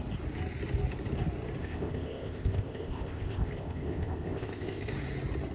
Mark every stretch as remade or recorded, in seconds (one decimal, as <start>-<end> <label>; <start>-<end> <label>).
0.0-1.6 recorded; 1.6-4.9 remade; 4.9-5.5 recorded